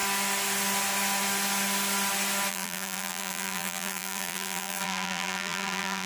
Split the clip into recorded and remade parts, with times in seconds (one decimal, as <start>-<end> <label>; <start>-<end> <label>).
0.0-2.5 recorded; 2.5-6.1 remade